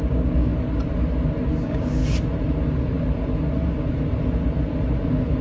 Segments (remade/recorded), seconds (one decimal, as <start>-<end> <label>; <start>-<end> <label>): 0.0-0.5 remade; 0.5-1.5 recorded; 1.5-2.0 remade; 2.0-5.4 recorded